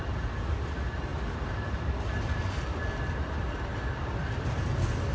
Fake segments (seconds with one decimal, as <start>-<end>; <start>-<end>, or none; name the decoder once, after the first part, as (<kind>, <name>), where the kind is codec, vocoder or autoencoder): none